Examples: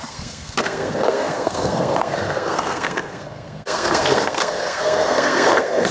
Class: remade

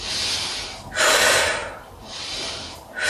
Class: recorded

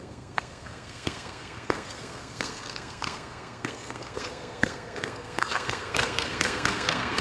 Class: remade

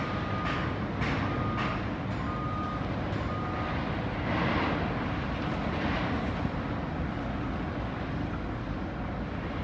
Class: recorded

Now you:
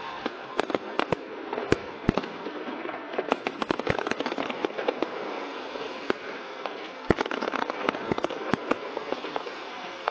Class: remade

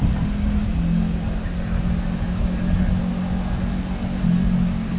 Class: recorded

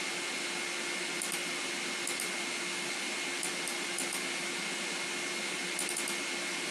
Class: recorded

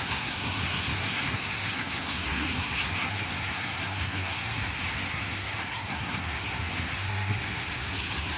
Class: remade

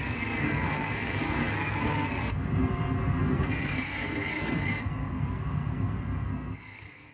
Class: remade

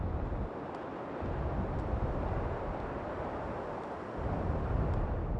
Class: recorded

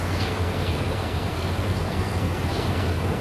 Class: remade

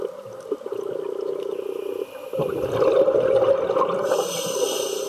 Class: recorded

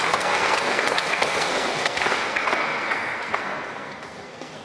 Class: remade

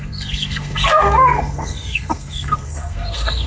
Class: remade